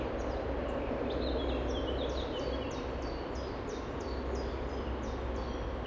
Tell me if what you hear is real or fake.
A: real